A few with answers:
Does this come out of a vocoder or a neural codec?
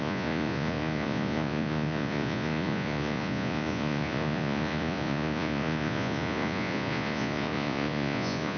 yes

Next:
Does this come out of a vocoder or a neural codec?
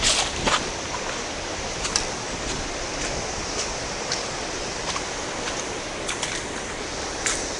no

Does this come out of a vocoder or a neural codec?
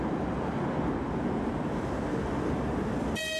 no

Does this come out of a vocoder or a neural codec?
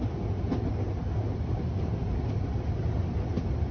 no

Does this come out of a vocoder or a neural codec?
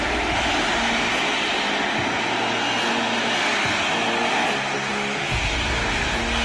no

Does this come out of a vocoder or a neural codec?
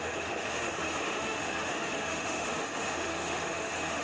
yes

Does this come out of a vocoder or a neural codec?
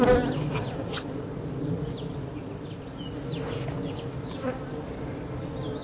no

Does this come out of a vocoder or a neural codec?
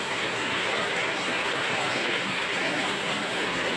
yes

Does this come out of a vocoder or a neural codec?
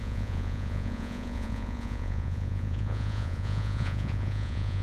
yes